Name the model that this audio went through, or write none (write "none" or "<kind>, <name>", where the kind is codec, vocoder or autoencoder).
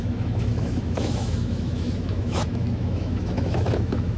autoencoder, DAC-VAE